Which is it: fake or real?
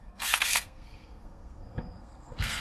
fake